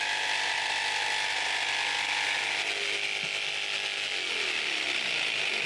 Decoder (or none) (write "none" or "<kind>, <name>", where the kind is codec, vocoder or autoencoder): none